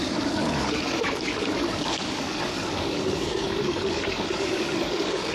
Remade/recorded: remade